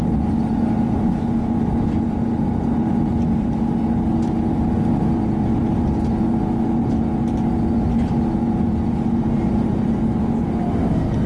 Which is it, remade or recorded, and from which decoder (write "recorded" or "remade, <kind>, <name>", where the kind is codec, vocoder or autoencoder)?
recorded